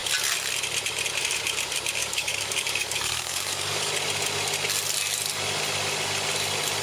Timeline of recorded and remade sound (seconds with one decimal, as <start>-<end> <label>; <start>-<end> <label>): 0.0-2.0 recorded; 2.0-3.9 remade; 3.9-6.8 recorded